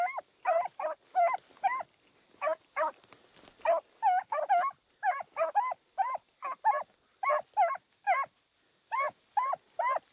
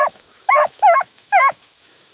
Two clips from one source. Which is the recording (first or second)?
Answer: first